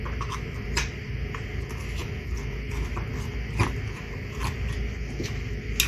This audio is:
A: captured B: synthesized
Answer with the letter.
A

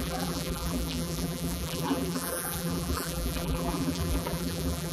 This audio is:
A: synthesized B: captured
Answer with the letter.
A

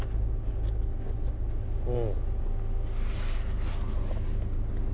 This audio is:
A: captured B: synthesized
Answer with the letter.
A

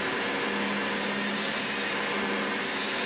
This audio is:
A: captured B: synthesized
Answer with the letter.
A